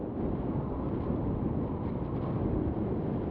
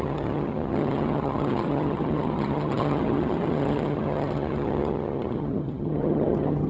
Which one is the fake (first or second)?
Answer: second